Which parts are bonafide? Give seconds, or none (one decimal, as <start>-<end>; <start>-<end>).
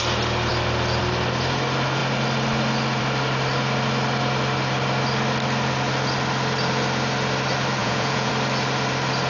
0.0-7.8; 8.3-9.3